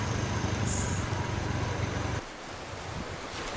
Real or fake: real